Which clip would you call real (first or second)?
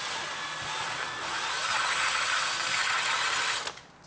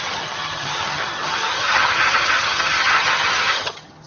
first